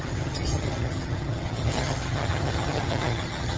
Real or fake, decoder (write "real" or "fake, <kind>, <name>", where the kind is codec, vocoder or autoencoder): fake, vocoder, HiFi-GAN